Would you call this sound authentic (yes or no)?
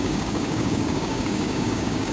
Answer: no